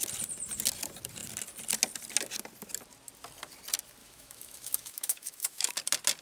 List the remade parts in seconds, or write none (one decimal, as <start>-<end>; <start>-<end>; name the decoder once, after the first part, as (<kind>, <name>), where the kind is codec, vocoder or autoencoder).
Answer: 4.0-5.7 (autoencoder, DAC-VAE)